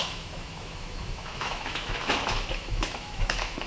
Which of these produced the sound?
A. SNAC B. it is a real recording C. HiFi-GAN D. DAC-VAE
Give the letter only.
D